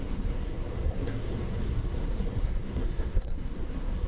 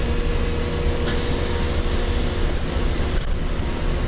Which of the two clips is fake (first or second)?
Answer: first